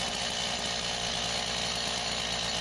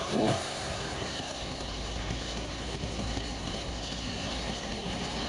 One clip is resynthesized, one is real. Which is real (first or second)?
first